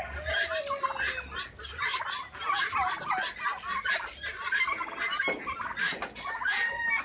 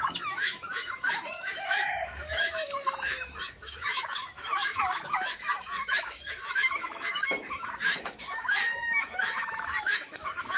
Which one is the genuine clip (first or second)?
first